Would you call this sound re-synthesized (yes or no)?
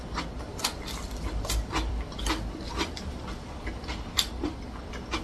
yes